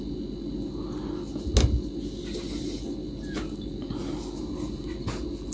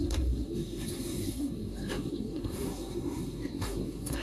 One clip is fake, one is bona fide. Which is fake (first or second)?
second